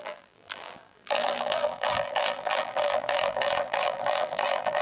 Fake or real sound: fake